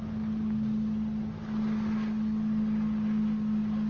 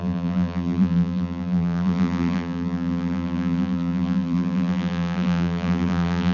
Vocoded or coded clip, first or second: second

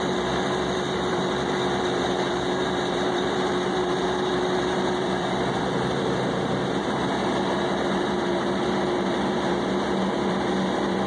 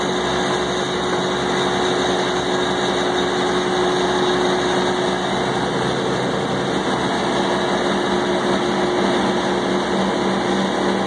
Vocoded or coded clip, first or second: first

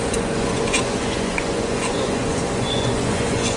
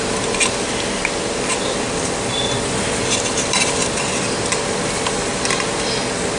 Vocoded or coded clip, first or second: first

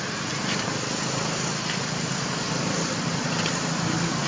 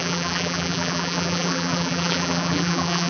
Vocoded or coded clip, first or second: second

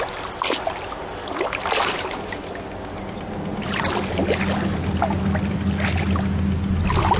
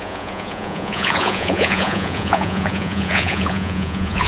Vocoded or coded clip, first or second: second